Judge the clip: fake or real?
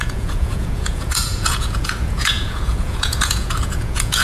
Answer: fake